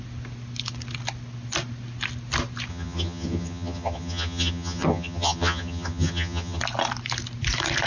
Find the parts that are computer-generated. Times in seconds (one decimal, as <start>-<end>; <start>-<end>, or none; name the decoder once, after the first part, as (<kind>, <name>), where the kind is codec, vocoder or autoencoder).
2.7-6.6 (vocoder, HiFi-GAN)